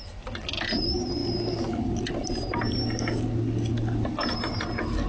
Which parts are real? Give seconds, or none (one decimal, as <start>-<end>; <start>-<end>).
0.0-5.1